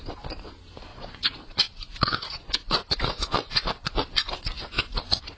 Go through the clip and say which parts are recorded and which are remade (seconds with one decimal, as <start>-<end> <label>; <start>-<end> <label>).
0.0-0.9 recorded; 0.9-4.1 remade; 4.1-5.4 recorded

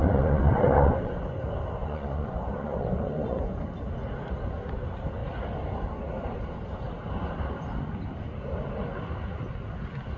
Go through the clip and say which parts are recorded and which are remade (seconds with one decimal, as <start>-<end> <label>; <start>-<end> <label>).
0.0-1.2 remade; 1.2-1.8 recorded; 1.8-3.4 remade; 3.4-10.2 recorded

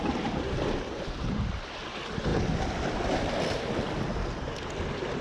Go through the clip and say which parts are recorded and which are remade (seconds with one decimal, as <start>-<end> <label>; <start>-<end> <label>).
0.0-5.2 recorded

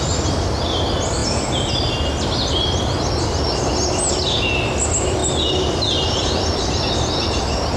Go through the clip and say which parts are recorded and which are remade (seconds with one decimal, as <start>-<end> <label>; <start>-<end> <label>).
0.0-7.8 recorded

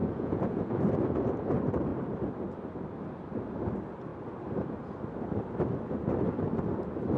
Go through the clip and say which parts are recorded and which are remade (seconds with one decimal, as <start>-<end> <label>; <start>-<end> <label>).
0.0-0.8 remade; 0.8-7.2 recorded

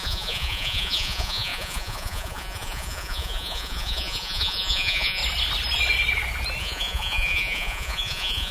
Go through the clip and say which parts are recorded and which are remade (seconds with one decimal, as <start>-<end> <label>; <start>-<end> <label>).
0.0-5.2 remade; 5.2-6.6 recorded; 6.6-8.5 remade

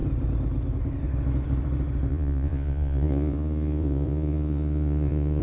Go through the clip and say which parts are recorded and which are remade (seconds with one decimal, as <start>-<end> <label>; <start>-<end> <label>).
0.0-2.1 recorded; 2.1-5.4 remade